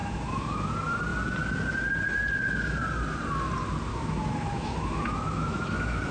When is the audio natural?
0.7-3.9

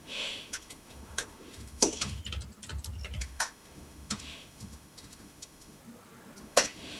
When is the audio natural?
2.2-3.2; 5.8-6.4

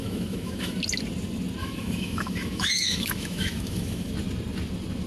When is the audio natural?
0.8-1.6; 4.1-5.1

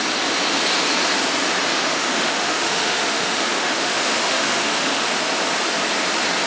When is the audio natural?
0.0-1.7; 5.3-6.5